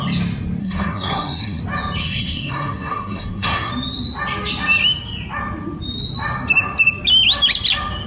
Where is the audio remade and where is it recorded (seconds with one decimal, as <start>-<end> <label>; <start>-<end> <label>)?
0.0-0.6 recorded; 0.6-1.6 remade; 1.6-2.0 recorded; 2.0-3.7 remade; 3.7-8.1 recorded